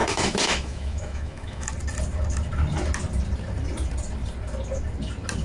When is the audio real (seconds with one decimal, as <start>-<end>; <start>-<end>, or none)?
1.7-5.4